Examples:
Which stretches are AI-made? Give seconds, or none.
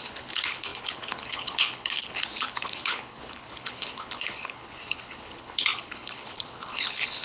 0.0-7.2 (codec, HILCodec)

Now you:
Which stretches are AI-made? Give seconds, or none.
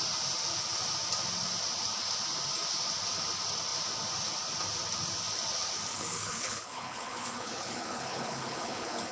5.9-9.1 (codec, HILCodec)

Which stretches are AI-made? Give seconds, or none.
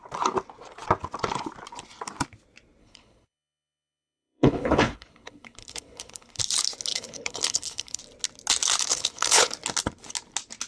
2.8-6.4 (codec, HILCodec); 6.9-8.0; 8.9-9.5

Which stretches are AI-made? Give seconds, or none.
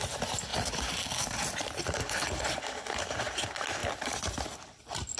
none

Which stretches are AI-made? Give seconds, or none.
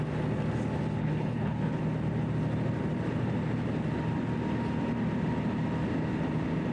1.0-1.8 (codec, HILCodec)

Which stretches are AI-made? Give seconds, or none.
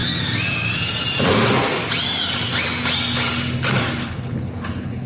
4.0-5.1 (codec, HILCodec)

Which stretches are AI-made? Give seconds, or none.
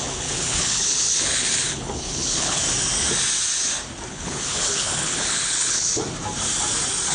0.0-2.6 (codec, HILCodec); 4.1-5.9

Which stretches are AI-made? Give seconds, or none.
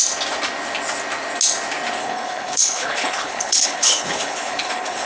2.0-5.1 (codec, HILCodec)